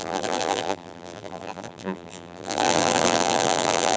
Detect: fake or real fake